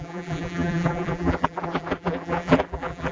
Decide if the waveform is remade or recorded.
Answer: remade